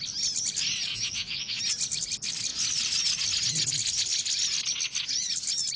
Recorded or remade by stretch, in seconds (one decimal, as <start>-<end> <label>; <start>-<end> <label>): 0.0-0.9 recorded; 0.9-1.6 remade; 1.6-5.8 recorded